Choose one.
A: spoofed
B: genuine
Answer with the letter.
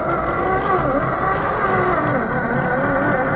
B